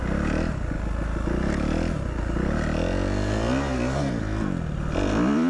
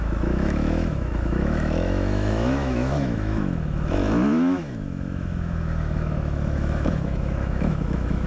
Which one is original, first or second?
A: first